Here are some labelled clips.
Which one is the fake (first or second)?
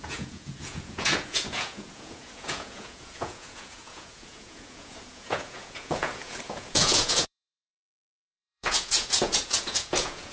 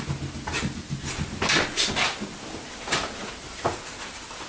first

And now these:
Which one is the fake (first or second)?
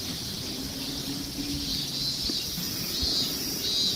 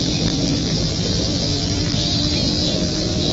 second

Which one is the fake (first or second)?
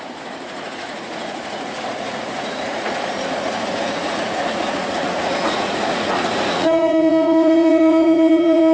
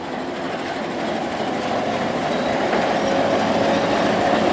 first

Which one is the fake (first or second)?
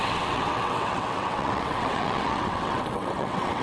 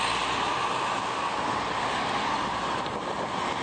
first